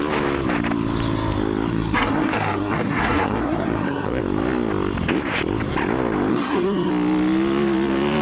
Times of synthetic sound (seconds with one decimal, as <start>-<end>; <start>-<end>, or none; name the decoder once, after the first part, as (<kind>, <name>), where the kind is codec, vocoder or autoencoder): 1.7-4.2 (codec, SNAC); 6.3-6.9